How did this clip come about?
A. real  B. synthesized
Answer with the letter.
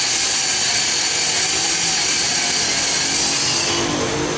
A